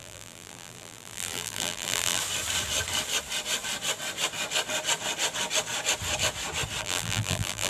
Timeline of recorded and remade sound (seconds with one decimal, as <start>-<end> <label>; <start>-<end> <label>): 0.0-2.2 remade; 2.2-6.8 recorded; 6.8-7.7 remade